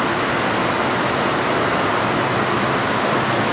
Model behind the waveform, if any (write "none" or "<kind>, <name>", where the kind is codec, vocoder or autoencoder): none